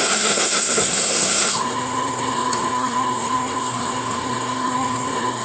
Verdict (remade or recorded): remade